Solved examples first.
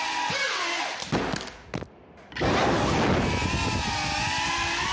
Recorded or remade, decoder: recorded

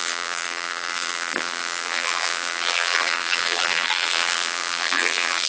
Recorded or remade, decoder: remade, vocoder, BigVGAN v2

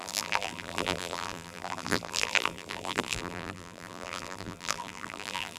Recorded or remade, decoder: remade, vocoder, BigVGAN v2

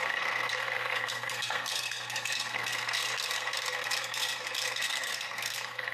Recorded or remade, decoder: remade, codec, SNAC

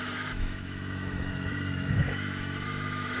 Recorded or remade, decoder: remade, autoencoder, DAC-VAE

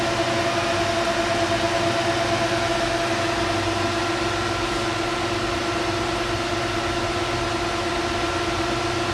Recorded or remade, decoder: recorded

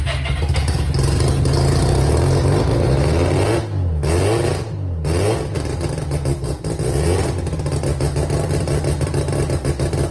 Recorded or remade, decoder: recorded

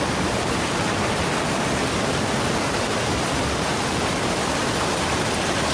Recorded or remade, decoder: recorded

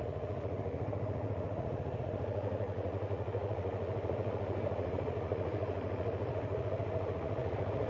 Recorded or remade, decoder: remade, vocoder, Vocos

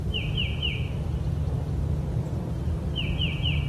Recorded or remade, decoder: recorded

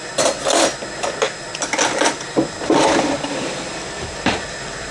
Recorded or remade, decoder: remade, vocoder, BigVGAN v2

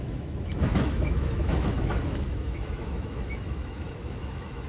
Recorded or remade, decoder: remade, autoencoder, DAC-VAE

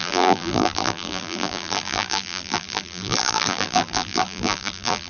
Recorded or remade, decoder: remade, vocoder, BigVGAN v2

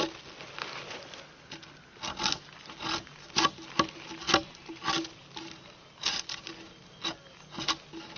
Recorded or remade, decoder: recorded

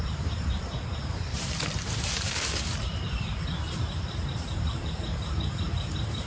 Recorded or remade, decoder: remade, vocoder, BigVGAN v2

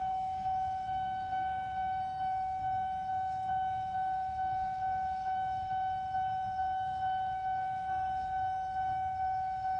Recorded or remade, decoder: remade, codec, SNAC